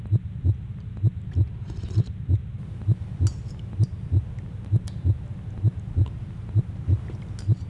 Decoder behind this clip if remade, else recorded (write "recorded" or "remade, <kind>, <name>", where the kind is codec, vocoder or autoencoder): recorded